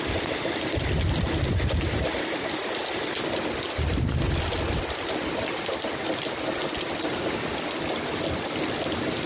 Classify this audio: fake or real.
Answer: real